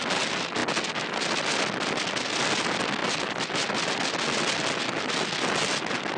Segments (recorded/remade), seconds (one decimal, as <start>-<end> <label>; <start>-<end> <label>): 0.0-6.2 recorded